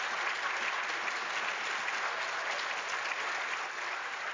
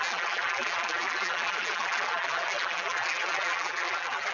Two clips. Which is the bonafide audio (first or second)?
first